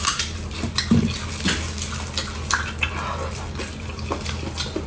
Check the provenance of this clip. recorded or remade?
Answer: recorded